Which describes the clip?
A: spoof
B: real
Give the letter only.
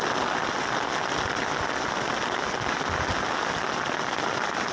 B